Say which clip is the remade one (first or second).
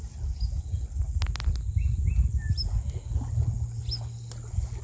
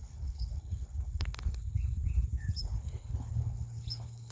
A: second